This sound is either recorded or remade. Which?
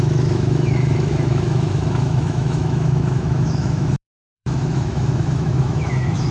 remade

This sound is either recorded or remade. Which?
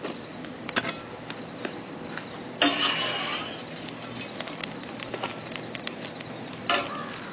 recorded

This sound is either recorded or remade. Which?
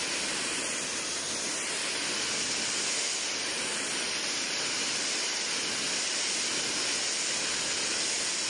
recorded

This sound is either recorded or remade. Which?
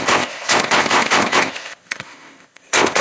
remade